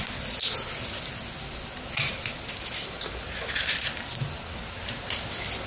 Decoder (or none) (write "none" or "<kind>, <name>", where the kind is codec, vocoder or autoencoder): none